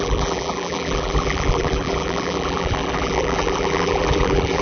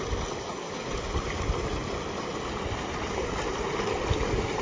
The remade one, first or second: first